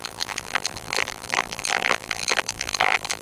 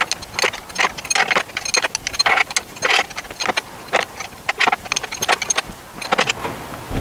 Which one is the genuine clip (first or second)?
second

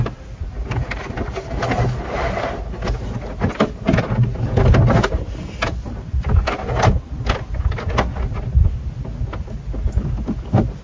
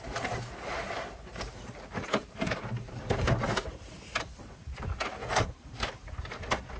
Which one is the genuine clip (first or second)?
first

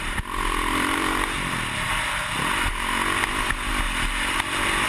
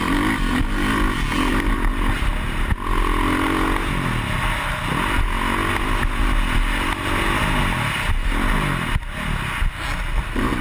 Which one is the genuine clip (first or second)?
second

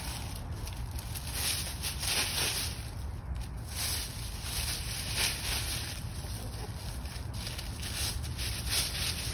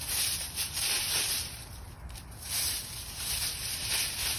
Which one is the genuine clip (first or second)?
first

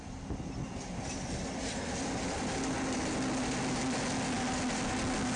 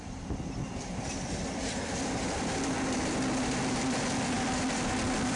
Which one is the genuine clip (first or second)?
first